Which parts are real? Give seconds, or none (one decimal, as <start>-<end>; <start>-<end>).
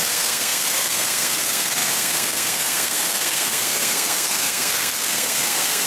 none